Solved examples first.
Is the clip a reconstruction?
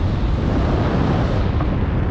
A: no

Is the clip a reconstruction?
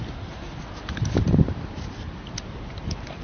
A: no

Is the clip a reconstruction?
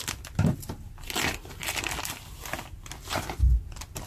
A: no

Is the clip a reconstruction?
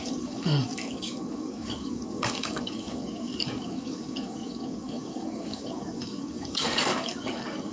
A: yes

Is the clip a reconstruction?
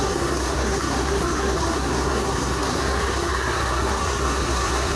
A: yes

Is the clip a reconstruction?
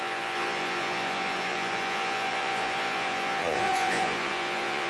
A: yes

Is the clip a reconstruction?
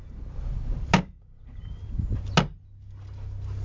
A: no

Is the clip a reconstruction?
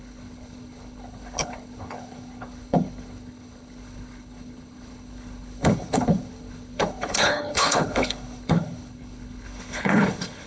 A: yes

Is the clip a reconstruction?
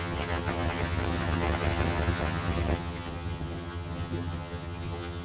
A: yes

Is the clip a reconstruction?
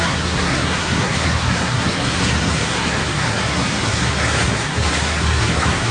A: yes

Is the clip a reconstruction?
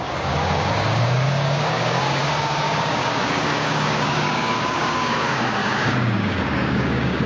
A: yes